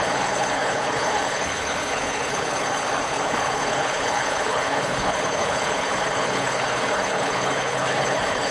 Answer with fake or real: fake